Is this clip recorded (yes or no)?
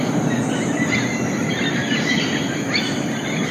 yes